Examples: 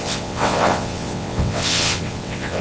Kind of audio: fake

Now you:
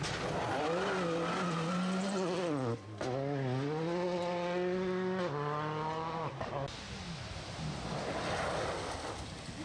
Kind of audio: real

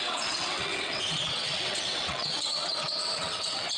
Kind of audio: fake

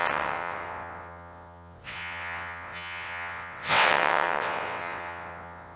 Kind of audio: fake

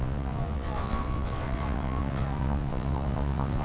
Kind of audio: fake